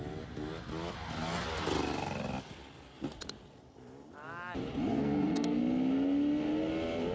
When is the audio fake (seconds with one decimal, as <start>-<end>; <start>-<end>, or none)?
5.0-5.6